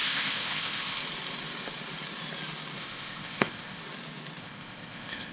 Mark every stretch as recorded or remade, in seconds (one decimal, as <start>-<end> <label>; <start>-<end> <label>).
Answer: 0.0-1.0 remade; 1.0-2.8 recorded; 2.8-3.8 remade; 3.8-4.4 recorded; 4.4-5.3 remade